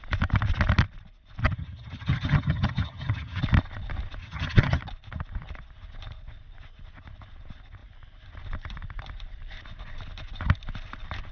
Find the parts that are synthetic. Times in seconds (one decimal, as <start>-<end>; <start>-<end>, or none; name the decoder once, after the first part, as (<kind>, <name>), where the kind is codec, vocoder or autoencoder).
1.4-3.4 (vocoder, HiFi-GAN); 4.2-4.8